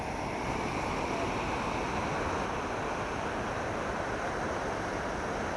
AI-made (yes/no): no